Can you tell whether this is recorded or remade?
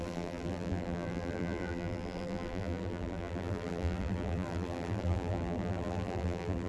remade